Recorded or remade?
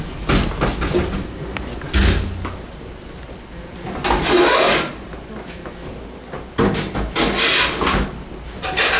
recorded